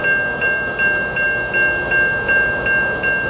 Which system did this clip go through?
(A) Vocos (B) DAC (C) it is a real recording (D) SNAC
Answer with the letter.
C